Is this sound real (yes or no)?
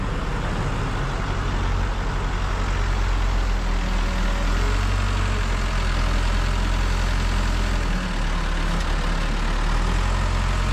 yes